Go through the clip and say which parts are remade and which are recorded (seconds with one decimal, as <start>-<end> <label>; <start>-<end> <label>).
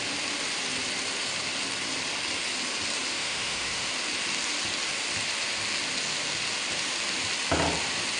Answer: 0.0-3.1 recorded; 3.1-3.9 remade; 3.9-8.2 recorded